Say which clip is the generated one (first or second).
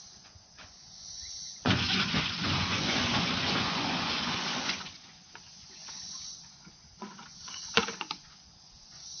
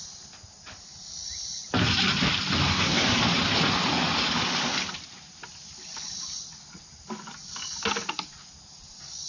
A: first